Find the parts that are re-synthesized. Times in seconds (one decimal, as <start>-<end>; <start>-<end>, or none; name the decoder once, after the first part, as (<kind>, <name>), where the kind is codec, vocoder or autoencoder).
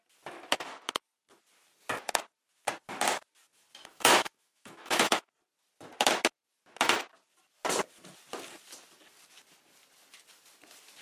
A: 3.9-5.3 (autoencoder, DAC-VAE)